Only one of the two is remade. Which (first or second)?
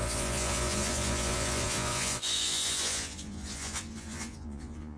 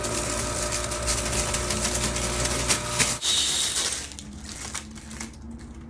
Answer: first